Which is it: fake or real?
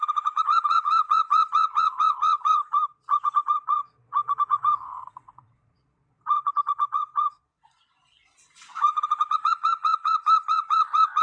fake